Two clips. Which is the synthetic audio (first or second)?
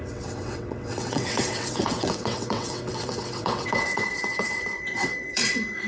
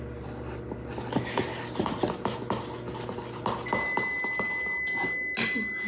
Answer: first